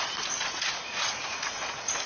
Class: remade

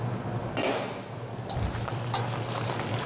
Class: recorded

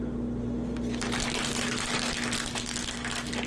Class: recorded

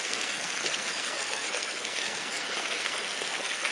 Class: remade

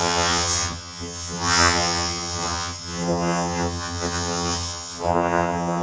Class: remade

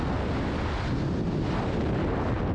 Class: recorded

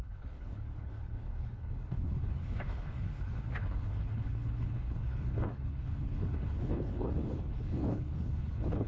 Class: remade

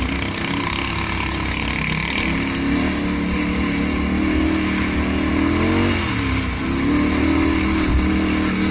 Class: recorded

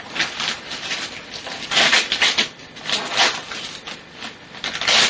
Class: recorded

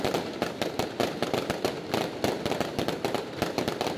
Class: recorded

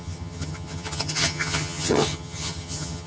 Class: remade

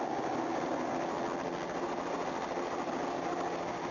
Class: recorded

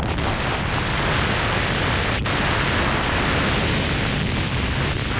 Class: recorded